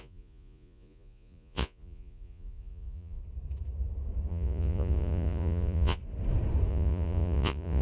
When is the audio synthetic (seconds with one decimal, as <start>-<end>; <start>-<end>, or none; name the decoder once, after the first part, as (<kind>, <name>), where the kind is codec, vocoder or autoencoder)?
0.0-3.2 (vocoder, Vocos); 4.3-6.0; 6.7-7.8